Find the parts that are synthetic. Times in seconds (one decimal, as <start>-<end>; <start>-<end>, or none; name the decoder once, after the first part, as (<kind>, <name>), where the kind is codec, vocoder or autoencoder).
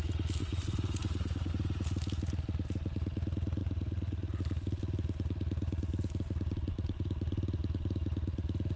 0.4-1.5 (vocoder, Vocos); 3.6-4.4